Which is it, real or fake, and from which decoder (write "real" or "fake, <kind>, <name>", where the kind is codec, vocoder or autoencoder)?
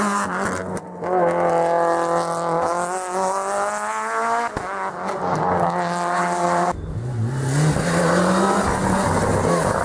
real